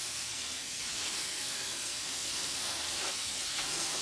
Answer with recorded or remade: remade